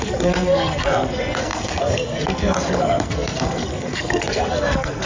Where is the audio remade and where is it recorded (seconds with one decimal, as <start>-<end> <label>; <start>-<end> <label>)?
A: 0.0-5.1 remade